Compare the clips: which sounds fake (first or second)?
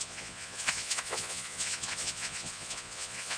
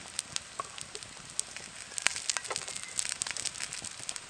first